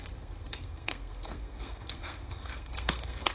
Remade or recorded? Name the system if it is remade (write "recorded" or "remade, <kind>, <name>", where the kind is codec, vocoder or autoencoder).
remade, codec, SNAC